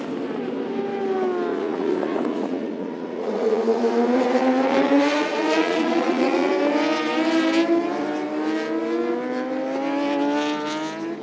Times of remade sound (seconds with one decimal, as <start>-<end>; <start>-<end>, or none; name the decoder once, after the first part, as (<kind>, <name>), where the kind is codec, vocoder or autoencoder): 1.5-6.5 (vocoder, Vocos)